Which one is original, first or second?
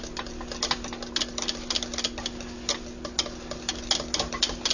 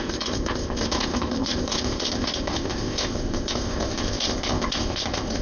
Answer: first